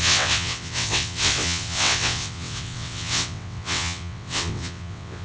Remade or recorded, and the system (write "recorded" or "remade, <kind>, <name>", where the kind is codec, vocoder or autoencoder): remade, vocoder, WaveNeXt